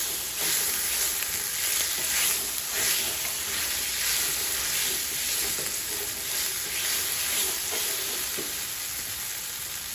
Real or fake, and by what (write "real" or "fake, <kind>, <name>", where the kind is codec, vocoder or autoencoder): real